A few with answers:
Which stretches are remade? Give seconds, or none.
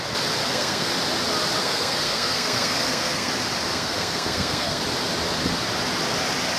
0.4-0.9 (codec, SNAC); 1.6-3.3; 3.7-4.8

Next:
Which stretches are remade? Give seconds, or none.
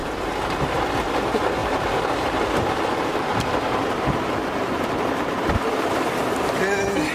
0.0-0.9 (vocoder, BigVGAN v2); 1.6-5.9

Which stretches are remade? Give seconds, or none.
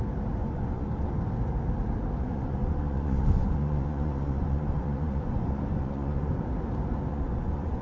0.4-1.1 (vocoder, Vocos); 2.2-6.3; 7.1-7.8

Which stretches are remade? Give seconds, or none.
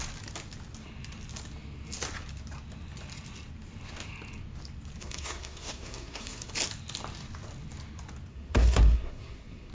5.0-6.5 (codec, SNAC); 8.3-9.7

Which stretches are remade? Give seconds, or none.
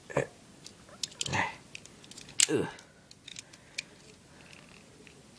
none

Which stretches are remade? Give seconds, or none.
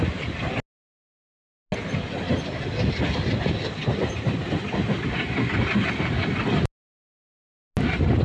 none